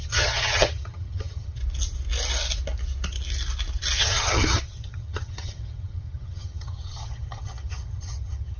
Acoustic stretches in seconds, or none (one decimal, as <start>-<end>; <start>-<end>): 1.6-4.0